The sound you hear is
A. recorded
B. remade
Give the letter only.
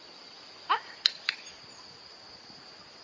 A